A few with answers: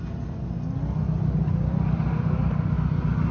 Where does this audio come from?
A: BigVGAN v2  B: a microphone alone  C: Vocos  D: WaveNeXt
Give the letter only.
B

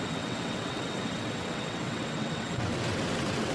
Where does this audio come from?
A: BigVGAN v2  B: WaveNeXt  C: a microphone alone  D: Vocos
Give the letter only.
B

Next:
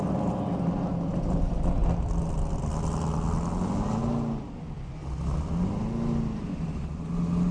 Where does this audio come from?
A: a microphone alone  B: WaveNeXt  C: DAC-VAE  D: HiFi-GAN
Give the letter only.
A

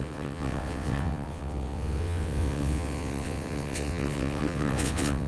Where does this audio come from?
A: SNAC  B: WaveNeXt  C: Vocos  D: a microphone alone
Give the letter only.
B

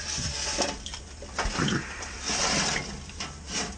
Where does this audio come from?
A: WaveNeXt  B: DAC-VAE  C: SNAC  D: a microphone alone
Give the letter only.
D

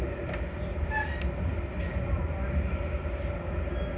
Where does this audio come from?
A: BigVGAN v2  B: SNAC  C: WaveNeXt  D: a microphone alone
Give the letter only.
D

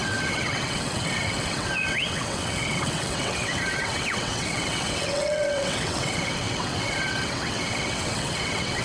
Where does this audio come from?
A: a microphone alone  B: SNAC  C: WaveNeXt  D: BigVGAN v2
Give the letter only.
C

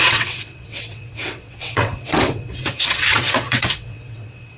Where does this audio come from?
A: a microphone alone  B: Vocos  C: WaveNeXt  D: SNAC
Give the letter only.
C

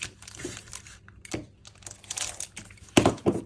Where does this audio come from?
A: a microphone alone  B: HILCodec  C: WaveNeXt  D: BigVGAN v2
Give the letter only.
A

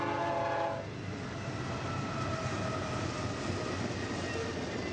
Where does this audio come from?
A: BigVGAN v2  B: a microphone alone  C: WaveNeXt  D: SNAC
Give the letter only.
B